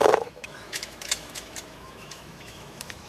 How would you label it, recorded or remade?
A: remade